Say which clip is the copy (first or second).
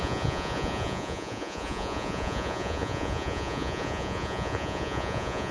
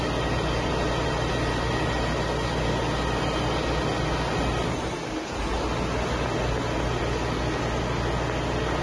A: first